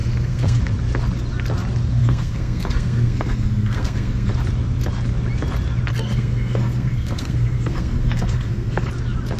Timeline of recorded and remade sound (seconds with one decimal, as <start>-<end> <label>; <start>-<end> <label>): 0.0-0.6 remade; 0.6-2.0 recorded; 2.0-4.3 remade; 4.3-5.9 recorded; 5.9-8.9 remade; 8.9-9.4 recorded